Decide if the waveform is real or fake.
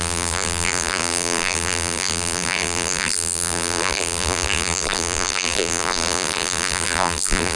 fake